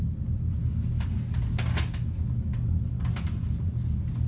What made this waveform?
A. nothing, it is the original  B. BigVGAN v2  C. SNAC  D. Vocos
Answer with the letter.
A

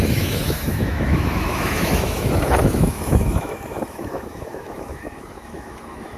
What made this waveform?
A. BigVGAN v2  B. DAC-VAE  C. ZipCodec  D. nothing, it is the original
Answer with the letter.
B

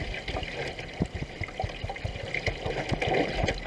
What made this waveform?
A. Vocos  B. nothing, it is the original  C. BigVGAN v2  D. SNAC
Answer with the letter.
B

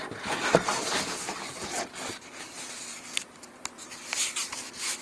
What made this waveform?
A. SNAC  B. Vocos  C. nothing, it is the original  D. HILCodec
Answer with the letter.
C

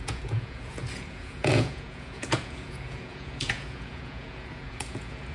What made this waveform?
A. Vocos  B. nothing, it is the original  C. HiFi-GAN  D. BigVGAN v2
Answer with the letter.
A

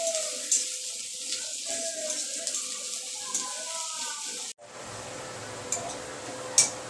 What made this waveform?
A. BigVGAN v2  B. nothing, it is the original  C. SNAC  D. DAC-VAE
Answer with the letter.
B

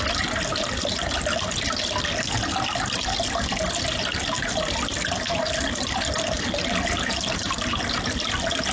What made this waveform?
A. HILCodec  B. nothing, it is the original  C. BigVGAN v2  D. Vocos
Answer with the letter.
B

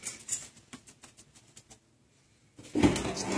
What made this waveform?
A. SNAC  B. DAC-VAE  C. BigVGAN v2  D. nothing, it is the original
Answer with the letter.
D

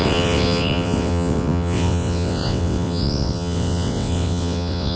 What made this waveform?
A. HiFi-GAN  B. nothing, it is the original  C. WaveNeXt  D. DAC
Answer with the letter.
C